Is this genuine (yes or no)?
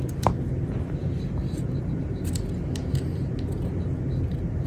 yes